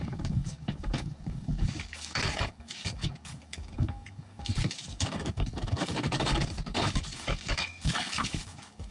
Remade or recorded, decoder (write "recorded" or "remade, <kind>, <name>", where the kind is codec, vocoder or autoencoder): remade, codec, DAC